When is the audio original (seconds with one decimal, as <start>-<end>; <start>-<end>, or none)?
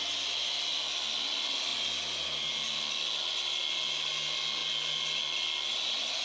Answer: 0.0-6.2